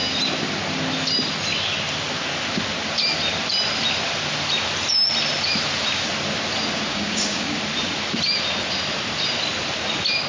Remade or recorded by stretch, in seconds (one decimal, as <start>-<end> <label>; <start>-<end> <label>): 0.0-6.9 recorded; 6.9-7.6 remade; 7.6-10.3 recorded